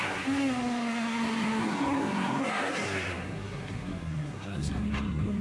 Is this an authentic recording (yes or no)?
no